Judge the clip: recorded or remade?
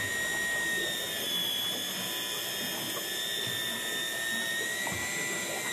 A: recorded